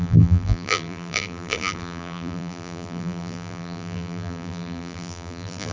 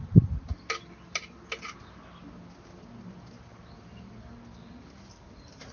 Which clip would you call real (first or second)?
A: second